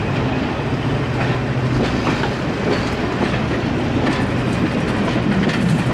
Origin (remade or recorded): recorded